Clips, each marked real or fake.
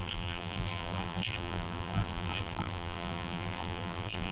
fake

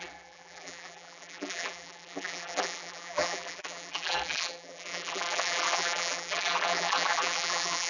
fake